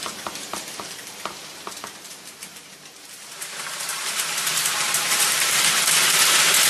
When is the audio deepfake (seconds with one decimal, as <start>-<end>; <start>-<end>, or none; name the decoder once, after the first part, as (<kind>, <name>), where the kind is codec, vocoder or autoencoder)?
0.0-6.7 (vocoder, BigVGAN v2)